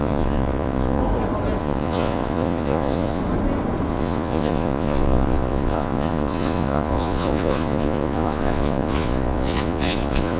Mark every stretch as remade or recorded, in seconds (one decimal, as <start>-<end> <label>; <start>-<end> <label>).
0.0-1.0 remade; 1.0-1.6 recorded; 1.6-3.2 remade; 3.2-3.9 recorded; 3.9-10.4 remade

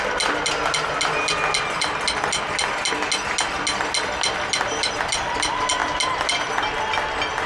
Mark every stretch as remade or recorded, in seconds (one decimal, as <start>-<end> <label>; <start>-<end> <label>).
0.0-7.5 recorded

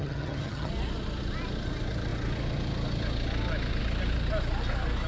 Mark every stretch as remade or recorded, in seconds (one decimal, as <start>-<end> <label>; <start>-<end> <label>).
0.0-0.7 remade; 0.7-5.1 recorded

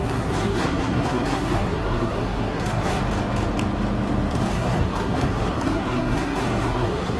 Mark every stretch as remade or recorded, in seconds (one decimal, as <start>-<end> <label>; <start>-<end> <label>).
0.0-3.0 remade; 3.0-4.3 recorded; 4.3-7.2 remade

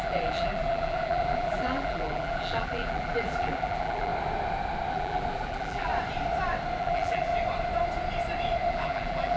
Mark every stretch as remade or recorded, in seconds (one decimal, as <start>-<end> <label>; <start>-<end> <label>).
0.0-4.1 remade; 4.1-4.9 recorded; 4.9-5.9 remade; 5.9-6.8 recorded; 6.8-7.3 remade; 7.3-8.7 recorded; 8.7-9.4 remade

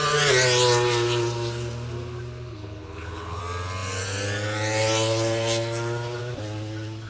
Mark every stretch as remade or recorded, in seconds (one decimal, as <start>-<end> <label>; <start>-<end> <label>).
0.0-2.5 recorded; 2.5-3.4 remade; 3.4-7.1 recorded